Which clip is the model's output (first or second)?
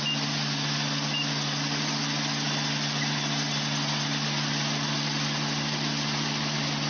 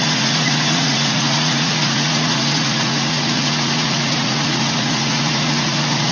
second